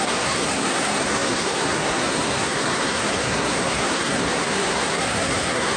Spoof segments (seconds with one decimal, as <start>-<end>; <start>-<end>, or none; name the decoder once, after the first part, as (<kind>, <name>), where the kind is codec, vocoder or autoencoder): 0.0-5.8 (codec, SNAC)